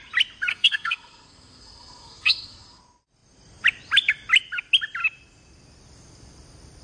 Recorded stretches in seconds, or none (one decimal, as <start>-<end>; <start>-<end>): 0.0-0.5; 2.8-6.8